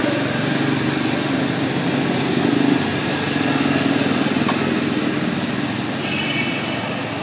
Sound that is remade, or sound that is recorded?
recorded